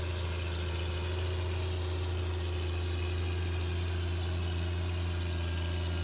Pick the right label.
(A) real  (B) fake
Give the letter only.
A